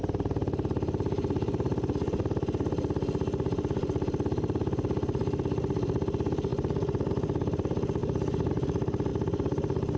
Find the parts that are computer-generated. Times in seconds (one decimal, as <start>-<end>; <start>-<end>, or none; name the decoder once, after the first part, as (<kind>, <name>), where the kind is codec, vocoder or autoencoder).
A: none